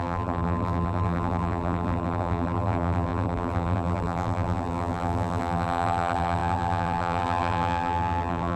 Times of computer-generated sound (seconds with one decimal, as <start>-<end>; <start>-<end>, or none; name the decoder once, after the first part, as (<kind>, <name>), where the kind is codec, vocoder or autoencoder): 0.0-8.6 (vocoder, BigVGAN v2)